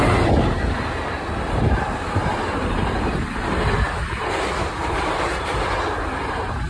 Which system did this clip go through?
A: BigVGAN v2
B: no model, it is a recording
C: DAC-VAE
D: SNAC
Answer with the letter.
B